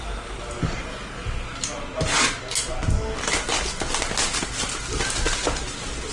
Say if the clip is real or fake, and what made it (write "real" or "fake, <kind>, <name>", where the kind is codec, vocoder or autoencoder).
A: real